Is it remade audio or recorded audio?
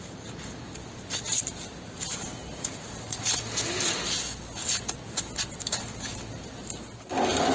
recorded